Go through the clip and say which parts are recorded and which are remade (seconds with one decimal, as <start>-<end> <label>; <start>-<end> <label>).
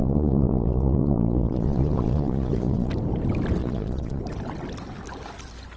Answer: 0.0-2.9 remade; 2.9-3.6 recorded; 3.6-4.2 remade; 4.2-5.8 recorded